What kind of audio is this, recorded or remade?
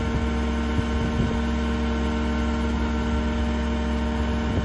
recorded